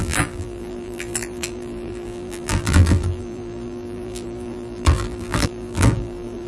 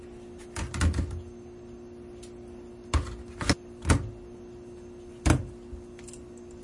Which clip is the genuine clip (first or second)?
second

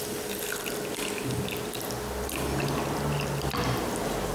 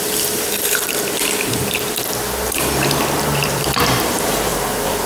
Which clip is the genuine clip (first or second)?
first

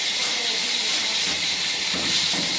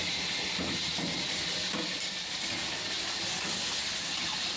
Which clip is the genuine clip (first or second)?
second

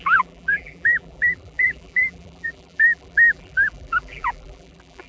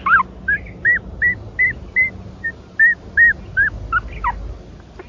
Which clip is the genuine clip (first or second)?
second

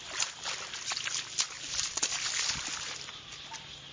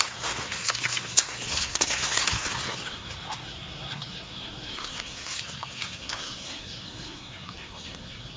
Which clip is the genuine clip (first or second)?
first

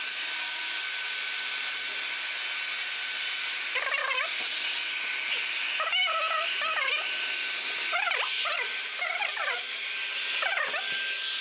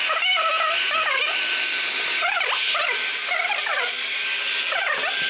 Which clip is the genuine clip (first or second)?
first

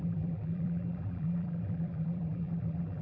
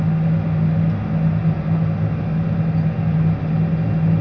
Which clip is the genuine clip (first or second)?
second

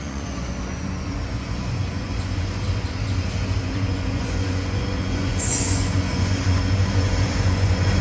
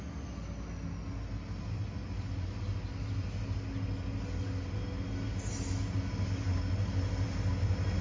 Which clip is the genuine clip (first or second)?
second